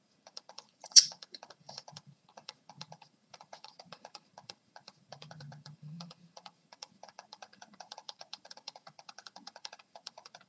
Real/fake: fake